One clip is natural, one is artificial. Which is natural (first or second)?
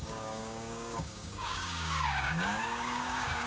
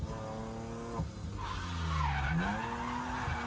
second